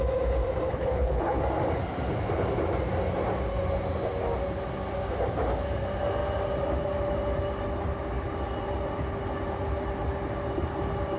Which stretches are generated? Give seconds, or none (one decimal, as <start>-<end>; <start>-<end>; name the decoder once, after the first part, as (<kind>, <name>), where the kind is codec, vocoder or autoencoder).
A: 0.7-1.4 (codec, HILCodec)